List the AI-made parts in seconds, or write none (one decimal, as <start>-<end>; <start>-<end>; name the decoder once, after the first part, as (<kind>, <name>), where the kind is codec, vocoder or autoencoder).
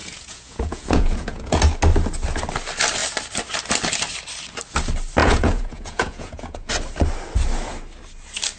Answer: 0.0-1.6 (vocoder, Vocos); 5.2-6.7